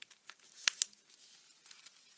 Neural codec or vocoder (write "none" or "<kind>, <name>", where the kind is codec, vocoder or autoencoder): none